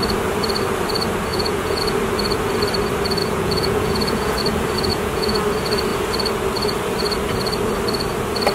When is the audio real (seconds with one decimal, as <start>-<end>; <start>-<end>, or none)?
0.0-1.3; 1.8-3.2; 4.4-4.9; 5.4-8.5